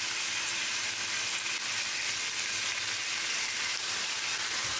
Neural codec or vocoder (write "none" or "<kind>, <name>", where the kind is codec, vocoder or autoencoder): none